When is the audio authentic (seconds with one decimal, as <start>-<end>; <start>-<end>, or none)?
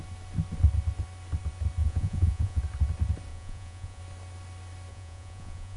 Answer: 0.0-1.8; 2.6-3.3; 4.0-4.9